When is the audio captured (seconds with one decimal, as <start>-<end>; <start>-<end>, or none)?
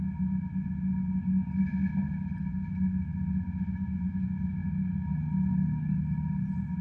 0.0-6.8